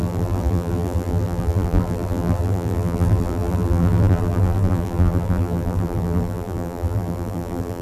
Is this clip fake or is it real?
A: fake